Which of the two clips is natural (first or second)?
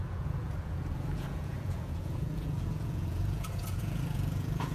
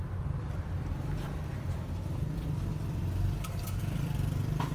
second